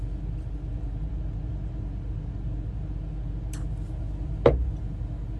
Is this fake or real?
real